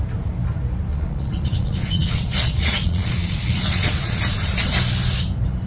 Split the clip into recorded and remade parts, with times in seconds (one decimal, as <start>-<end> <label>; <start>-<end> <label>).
0.0-0.9 recorded; 0.9-4.2 remade; 4.2-5.7 recorded